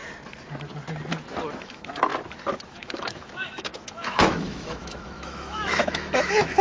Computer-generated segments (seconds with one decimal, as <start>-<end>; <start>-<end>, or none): 1.6-2.1; 2.7-6.6